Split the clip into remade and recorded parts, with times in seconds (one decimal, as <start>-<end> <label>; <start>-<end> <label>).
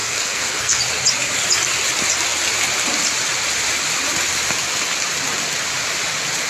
0.0-0.8 remade; 0.8-6.5 recorded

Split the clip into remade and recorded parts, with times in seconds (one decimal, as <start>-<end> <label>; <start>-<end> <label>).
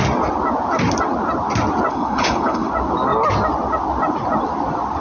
0.0-1.9 recorded; 1.9-2.7 remade; 2.7-5.0 recorded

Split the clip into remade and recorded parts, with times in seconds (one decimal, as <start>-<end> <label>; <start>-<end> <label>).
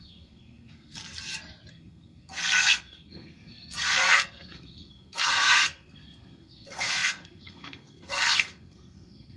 0.0-1.0 remade; 1.0-1.7 recorded; 1.7-9.4 remade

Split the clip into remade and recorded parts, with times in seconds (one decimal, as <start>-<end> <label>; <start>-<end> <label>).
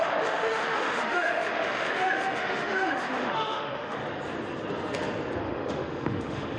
0.0-4.0 remade; 4.0-5.4 recorded; 5.4-6.6 remade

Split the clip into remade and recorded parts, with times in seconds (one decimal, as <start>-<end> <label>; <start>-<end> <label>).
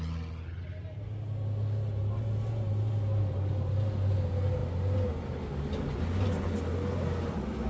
0.0-7.7 recorded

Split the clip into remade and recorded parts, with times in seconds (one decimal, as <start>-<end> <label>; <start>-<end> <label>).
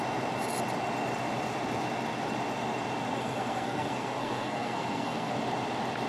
0.0-3.2 recorded; 3.2-5.3 remade; 5.3-6.1 recorded